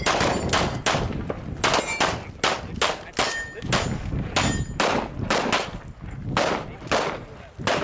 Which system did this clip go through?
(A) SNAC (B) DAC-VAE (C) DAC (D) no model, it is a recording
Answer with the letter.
D